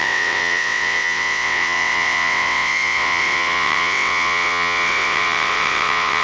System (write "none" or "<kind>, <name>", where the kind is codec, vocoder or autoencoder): vocoder, WaveNeXt